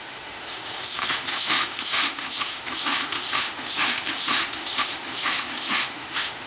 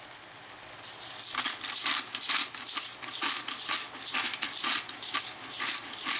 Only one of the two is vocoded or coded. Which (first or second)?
first